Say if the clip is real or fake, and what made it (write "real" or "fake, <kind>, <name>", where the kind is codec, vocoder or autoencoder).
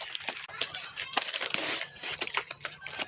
real